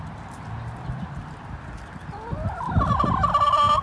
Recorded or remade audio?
recorded